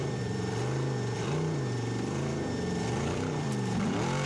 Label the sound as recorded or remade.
remade